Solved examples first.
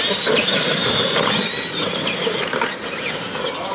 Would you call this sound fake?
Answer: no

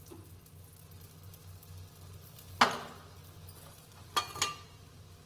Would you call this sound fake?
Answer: no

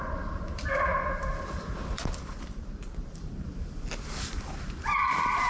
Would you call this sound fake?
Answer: yes